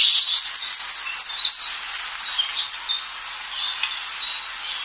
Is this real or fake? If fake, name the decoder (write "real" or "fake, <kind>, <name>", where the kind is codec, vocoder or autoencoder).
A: real